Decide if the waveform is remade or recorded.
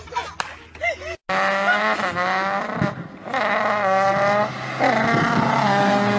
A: recorded